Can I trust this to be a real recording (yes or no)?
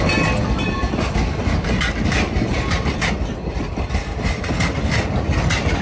yes